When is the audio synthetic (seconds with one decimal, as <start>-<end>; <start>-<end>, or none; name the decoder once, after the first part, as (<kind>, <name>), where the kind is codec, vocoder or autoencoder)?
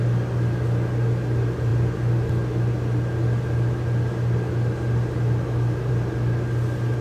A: none